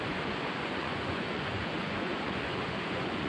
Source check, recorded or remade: remade